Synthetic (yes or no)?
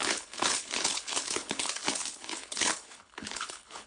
yes